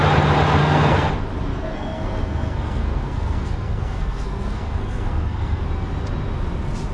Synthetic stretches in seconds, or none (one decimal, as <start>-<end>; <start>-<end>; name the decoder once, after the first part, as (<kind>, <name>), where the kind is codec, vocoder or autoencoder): 0.6-1.1 (codec, SNAC); 1.5-5.6